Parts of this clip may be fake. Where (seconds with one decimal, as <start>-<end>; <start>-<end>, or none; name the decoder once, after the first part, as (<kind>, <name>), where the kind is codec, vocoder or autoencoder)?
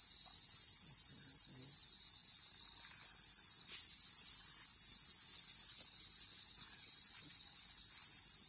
none